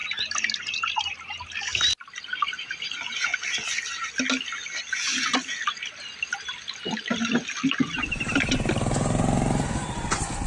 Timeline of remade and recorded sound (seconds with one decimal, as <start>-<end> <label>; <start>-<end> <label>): 0.0-10.5 recorded